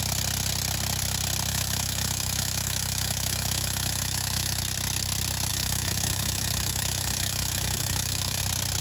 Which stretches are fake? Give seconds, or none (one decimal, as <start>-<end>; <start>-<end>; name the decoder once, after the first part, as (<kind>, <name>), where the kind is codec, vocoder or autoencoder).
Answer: 1.5-4.6 (autoencoder, DAC-VAE); 5.5-8.4